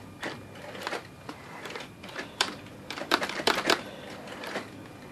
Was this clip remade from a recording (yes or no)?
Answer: yes